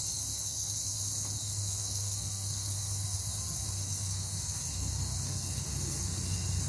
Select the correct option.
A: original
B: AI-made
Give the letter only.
B